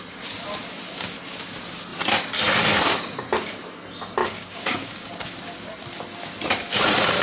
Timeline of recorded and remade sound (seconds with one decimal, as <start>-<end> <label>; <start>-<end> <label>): 0.0-4.2 recorded; 4.2-5.1 remade; 5.1-7.2 recorded